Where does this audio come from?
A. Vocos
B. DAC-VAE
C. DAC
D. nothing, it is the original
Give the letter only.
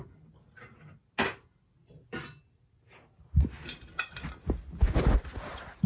D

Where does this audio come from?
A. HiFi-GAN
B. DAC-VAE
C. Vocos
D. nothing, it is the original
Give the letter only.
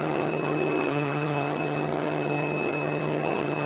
A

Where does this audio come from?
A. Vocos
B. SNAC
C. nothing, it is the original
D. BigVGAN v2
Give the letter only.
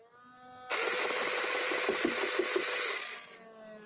C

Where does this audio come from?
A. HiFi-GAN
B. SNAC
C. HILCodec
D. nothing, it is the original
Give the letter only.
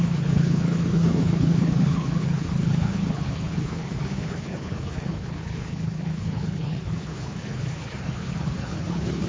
C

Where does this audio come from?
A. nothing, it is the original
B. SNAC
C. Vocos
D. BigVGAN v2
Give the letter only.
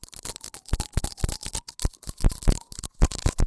A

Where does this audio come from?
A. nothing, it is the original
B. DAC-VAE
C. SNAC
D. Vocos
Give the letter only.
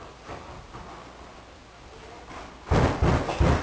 A